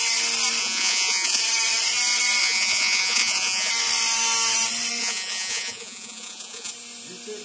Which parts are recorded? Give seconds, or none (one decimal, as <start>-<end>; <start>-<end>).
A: 0.0-0.6; 1.4-2.4; 3.7-5.0; 6.7-7.4

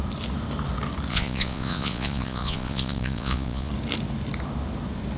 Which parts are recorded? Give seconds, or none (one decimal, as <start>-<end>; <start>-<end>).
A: 0.0-1.1; 3.7-5.2

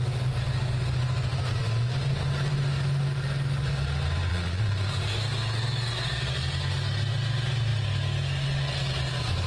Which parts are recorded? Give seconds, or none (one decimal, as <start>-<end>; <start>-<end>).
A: 0.0-4.3; 4.9-9.5

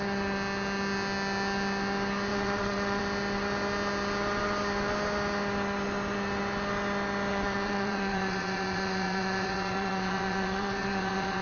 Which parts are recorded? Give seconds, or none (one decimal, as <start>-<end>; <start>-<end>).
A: 0.0-2.3; 3.0-7.3

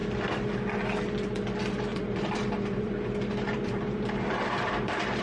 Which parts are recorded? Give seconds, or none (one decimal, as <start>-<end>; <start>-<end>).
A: 0.0-1.9

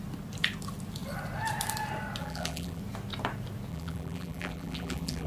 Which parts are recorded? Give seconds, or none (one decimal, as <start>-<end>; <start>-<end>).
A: 0.0-2.2; 2.8-3.7